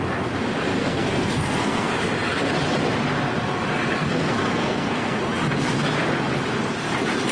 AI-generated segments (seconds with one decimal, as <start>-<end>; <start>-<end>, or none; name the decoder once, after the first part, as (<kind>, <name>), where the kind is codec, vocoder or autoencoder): 0.7-1.9 (codec, SNAC); 4.0-5.2